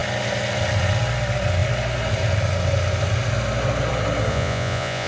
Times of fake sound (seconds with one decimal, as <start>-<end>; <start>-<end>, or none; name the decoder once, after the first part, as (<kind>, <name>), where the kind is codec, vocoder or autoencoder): 4.3-5.1 (vocoder, Vocos)